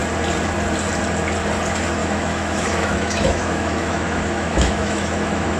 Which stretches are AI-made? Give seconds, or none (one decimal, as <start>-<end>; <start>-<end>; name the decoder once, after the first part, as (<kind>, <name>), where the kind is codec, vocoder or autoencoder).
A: 2.0-5.6 (autoencoder, DAC-VAE)